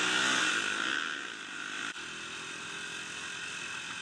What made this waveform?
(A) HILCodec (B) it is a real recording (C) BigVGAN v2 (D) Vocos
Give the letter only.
B